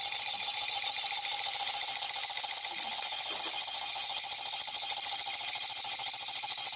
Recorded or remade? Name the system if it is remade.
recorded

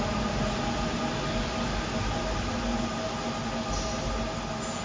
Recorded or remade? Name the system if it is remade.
recorded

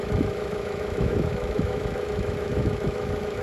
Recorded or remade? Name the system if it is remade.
remade, autoencoder, DAC-VAE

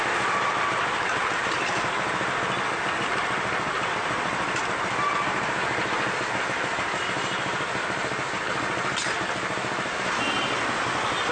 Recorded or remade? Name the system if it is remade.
recorded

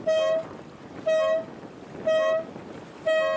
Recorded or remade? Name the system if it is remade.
recorded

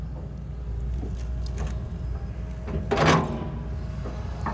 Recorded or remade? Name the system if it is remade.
recorded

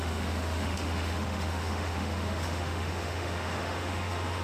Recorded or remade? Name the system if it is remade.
remade, autoencoder, DAC-VAE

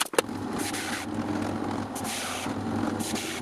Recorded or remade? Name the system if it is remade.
recorded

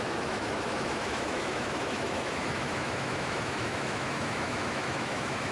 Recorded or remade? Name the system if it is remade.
remade, autoencoder, DAC-VAE